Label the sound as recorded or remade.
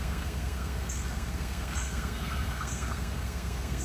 remade